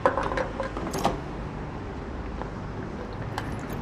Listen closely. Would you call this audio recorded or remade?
recorded